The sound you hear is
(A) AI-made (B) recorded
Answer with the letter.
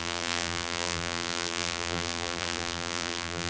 A